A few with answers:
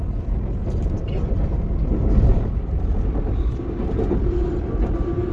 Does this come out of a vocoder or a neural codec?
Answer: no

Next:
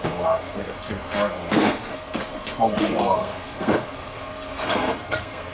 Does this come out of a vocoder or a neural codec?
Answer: yes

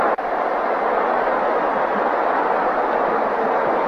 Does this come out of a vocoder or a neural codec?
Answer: no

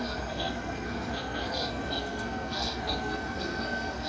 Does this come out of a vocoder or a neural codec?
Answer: yes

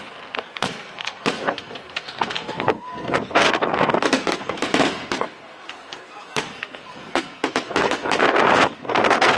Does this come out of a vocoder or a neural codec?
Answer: yes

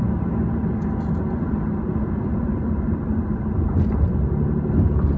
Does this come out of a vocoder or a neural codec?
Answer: no